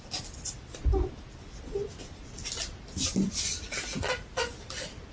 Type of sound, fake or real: real